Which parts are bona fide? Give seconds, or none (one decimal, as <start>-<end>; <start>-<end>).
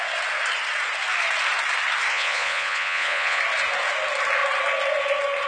0.0-2.1; 3.4-5.5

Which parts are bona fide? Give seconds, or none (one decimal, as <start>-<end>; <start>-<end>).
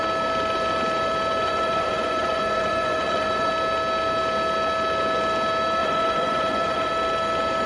0.0-1.4; 3.5-5.8; 6.9-7.7